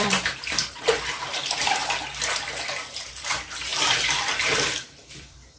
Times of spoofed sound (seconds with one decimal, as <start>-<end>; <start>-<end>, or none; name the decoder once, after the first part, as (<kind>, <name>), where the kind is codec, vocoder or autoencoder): 0.0-1.8 (vocoder, BigVGAN v2); 3.1-5.6